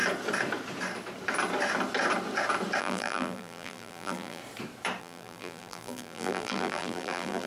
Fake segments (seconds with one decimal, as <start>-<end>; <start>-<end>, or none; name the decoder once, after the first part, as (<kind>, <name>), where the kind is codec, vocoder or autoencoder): 2.8-4.4 (vocoder, BigVGAN v2); 5.0-7.5